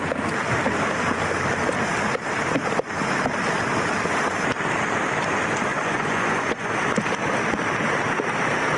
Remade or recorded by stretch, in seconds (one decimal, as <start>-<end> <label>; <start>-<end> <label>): 0.0-5.7 recorded; 5.7-6.7 remade; 6.7-8.8 recorded